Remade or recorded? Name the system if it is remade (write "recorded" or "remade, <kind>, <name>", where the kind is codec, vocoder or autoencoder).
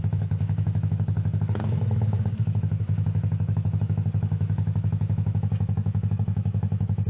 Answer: remade, autoencoder, DAC-VAE